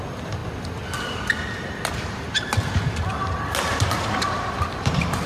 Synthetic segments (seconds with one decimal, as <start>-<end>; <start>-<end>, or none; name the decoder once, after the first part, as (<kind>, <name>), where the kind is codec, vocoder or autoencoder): 0.0-0.4 (vocoder, BigVGAN v2); 3.6-5.3